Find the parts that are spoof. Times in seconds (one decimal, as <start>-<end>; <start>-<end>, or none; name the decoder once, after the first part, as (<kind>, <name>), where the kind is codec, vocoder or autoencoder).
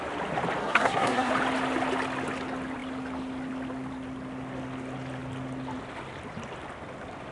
0.6-1.3 (codec, SNAC)